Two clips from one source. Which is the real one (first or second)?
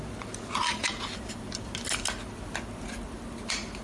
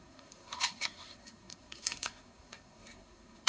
first